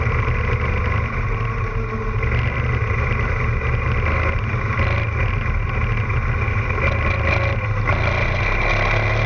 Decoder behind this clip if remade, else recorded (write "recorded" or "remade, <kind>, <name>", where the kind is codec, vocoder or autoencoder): recorded